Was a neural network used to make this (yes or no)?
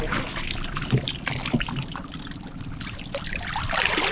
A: no